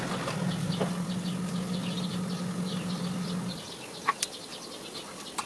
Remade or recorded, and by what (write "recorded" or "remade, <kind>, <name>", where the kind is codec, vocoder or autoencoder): recorded